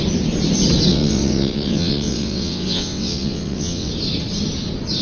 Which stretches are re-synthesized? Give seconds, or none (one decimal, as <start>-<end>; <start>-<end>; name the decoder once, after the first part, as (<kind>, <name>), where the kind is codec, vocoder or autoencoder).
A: 0.9-3.9 (vocoder, WaveNeXt)